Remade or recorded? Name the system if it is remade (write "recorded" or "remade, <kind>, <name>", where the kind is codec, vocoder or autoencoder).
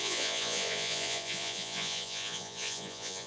remade, vocoder, Vocos